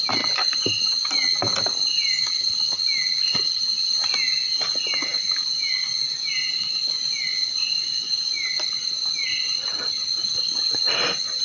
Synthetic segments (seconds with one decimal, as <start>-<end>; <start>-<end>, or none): none